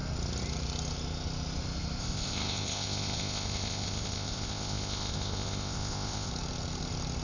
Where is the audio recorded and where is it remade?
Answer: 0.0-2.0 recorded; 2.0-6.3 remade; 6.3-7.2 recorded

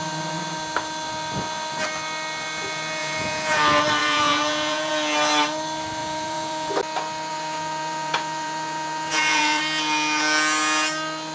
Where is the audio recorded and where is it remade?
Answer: 0.0-3.0 recorded; 3.0-3.6 remade; 3.6-4.0 recorded; 4.0-4.9 remade; 4.9-6.0 recorded; 6.0-6.7 remade; 6.7-7.3 recorded; 7.3-9.6 remade; 9.6-11.3 recorded